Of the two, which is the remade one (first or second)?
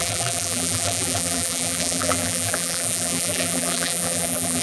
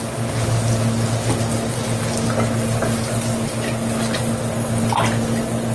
first